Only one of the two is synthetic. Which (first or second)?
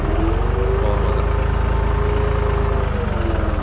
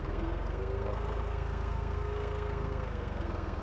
second